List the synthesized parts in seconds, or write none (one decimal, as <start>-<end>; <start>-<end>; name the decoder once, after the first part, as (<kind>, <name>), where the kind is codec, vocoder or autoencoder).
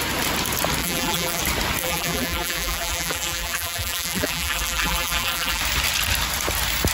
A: 0.8-1.4 (vocoder, BigVGAN v2); 1.8-5.6